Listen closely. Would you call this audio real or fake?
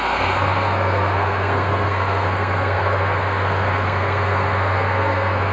fake